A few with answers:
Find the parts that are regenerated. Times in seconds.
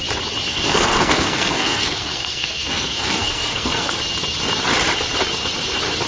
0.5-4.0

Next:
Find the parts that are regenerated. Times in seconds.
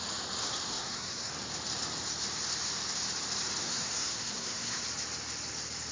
0.4-1.3; 3.6-4.8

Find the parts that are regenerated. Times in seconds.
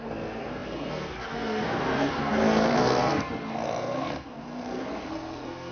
0.0-5.7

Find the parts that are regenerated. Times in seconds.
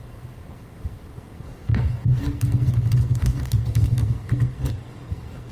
0.0-5.5